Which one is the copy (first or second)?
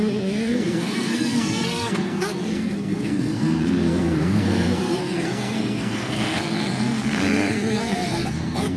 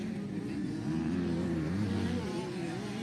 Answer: first